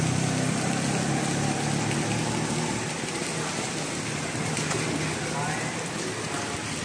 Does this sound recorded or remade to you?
recorded